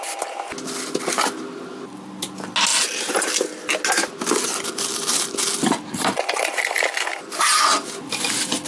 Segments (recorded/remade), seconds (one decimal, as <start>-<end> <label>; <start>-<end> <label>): 0.0-8.7 recorded